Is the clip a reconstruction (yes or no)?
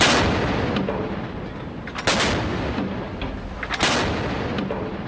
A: no